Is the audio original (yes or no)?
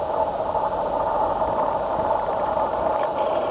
no